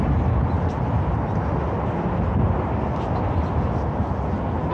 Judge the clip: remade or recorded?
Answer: recorded